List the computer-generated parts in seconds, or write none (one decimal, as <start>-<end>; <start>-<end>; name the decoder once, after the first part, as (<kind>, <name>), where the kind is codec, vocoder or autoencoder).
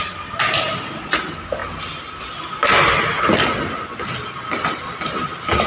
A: none